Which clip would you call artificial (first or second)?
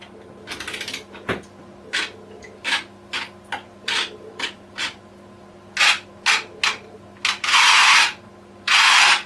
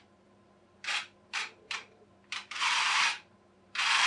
second